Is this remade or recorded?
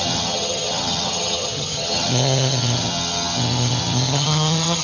remade